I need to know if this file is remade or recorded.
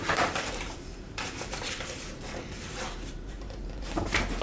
remade